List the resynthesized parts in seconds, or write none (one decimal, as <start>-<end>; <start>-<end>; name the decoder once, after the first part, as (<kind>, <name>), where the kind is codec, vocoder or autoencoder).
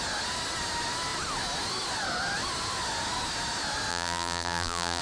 3.9-5.0 (vocoder, BigVGAN v2)